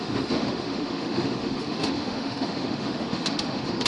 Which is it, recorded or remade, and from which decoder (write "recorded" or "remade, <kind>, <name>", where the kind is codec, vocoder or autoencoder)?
remade, autoencoder, DAC-VAE